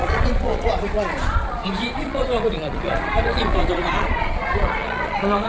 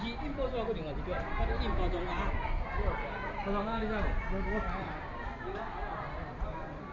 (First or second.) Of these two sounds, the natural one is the second